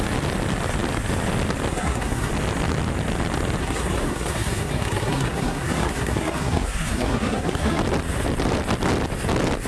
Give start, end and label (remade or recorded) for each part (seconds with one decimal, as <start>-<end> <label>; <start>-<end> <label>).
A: 0.0-1.7 recorded; 1.7-2.3 remade; 2.3-3.6 recorded; 3.6-7.8 remade; 7.8-9.7 recorded